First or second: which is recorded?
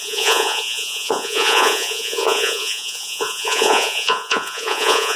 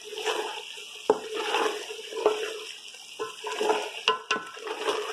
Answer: second